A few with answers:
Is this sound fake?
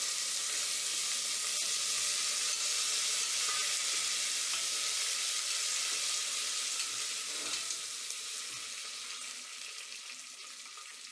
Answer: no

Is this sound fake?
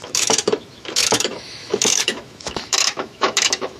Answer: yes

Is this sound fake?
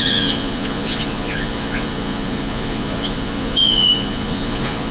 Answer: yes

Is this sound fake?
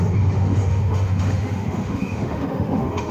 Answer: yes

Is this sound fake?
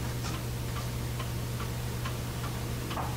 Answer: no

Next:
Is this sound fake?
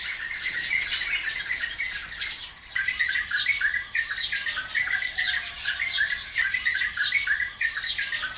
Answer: no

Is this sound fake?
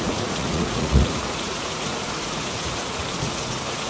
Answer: yes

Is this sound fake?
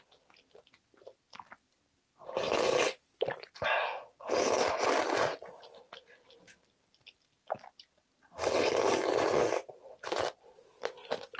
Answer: no